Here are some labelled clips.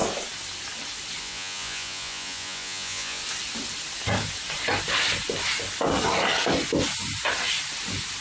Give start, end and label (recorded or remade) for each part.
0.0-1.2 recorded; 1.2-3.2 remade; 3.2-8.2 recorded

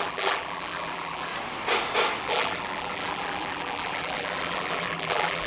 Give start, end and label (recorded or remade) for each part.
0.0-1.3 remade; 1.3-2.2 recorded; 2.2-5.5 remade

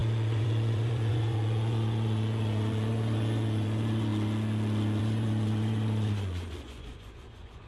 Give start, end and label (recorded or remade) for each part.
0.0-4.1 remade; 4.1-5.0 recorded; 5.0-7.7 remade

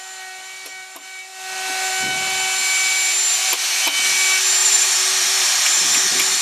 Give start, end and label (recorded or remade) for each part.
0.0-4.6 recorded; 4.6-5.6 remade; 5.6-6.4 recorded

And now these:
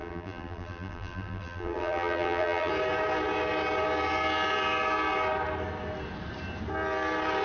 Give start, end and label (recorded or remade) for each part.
0.0-2.7 remade; 2.7-7.4 recorded

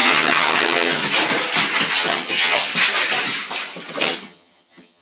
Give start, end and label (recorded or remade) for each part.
0.0-1.0 remade; 1.0-2.0 recorded; 2.0-2.7 remade; 2.7-4.0 recorded; 4.0-5.0 remade

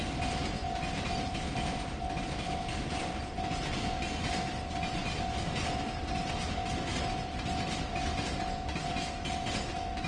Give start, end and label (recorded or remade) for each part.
0.0-10.1 recorded

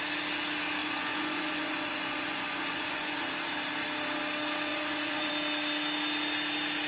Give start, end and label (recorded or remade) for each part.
0.0-0.8 recorded; 0.8-3.2 remade; 3.2-4.7 recorded; 4.7-5.3 remade; 5.3-6.9 recorded